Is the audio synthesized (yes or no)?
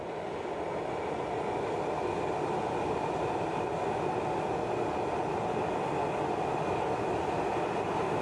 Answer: no